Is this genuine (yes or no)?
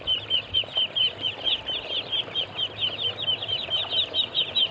yes